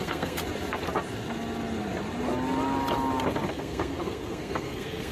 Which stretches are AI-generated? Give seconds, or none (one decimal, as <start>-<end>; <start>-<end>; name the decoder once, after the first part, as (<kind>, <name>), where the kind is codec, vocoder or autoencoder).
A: 0.0-0.4 (codec, SNAC); 3.5-5.1